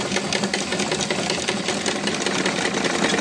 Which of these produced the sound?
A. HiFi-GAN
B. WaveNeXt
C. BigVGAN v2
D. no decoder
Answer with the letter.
D